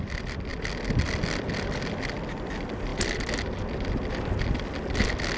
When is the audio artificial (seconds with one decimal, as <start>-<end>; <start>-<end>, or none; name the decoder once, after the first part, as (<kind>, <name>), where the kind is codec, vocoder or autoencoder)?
none